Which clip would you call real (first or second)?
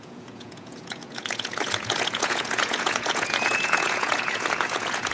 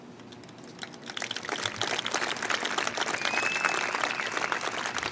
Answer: second